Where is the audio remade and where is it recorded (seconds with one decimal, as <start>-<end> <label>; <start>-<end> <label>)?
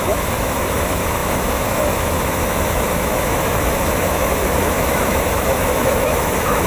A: 0.0-6.7 remade